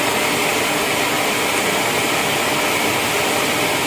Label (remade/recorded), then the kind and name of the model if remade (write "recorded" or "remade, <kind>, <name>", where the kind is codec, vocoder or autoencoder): recorded